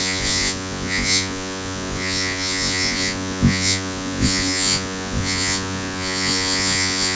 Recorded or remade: remade